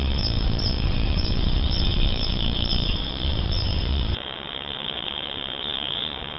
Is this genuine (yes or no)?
no